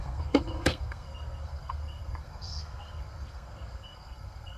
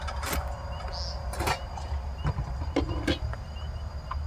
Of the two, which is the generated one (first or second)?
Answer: first